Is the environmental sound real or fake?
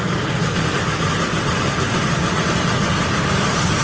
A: real